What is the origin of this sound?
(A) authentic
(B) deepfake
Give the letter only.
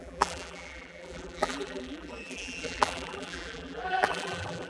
B